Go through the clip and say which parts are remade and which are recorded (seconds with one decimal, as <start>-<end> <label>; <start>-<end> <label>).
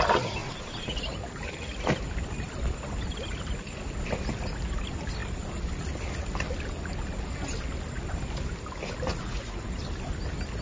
0.0-0.4 recorded; 0.4-1.0 remade; 1.0-9.1 recorded; 9.1-9.7 remade; 9.7-10.6 recorded